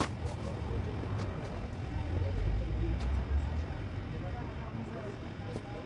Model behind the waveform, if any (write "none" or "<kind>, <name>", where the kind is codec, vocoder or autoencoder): none